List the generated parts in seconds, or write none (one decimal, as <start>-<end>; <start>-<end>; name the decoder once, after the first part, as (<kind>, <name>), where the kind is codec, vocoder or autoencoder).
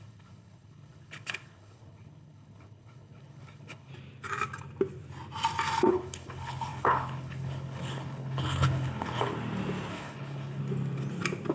0.0-3.9 (codec, HILCodec); 5.9-9.3; 9.9-10.6